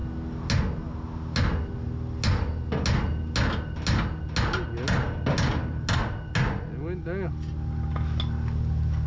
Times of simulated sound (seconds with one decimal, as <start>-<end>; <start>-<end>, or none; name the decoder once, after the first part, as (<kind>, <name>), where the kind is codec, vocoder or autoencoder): none